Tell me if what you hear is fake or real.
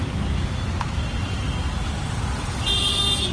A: real